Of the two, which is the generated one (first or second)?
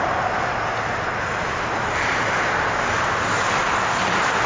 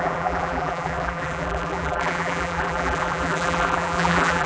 second